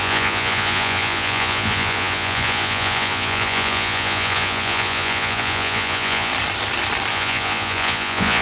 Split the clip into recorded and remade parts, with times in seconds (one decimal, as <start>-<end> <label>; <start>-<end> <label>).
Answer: 0.0-6.3 remade; 6.3-7.1 recorded; 7.1-8.4 remade